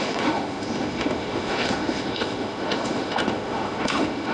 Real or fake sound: fake